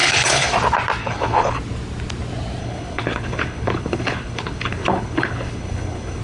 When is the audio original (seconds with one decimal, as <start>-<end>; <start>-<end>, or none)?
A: 0.5-1.0; 1.6-2.6